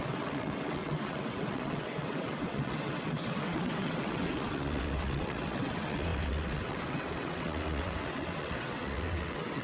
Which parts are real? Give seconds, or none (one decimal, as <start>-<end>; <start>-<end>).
none